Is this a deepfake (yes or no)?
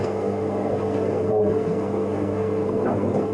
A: yes